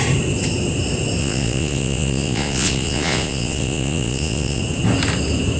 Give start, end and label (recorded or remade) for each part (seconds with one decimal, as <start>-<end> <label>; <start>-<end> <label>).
0.0-1.2 recorded; 1.2-4.6 remade; 4.6-5.6 recorded